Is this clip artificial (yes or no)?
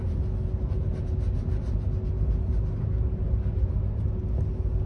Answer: no